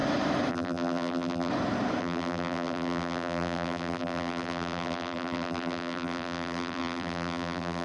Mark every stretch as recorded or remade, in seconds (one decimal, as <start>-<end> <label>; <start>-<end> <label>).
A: 0.0-0.5 recorded; 0.5-1.5 remade; 1.5-2.0 recorded; 2.0-7.8 remade